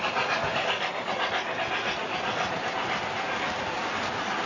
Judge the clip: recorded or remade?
recorded